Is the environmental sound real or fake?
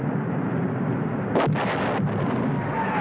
real